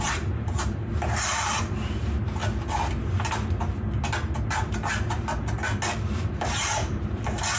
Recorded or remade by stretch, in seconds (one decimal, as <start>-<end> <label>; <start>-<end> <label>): 0.0-2.4 remade; 2.4-6.2 recorded; 6.2-7.6 remade